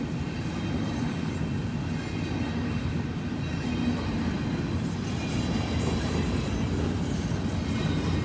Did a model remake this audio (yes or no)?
no